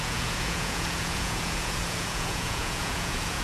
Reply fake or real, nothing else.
fake